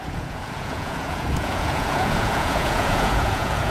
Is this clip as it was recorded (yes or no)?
no